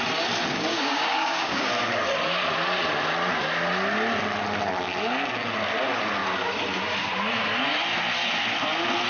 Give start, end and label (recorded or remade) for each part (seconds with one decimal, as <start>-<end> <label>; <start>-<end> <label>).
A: 0.0-0.7 recorded; 0.7-1.7 remade; 1.7-9.1 recorded